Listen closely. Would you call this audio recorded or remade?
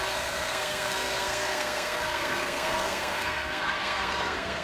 remade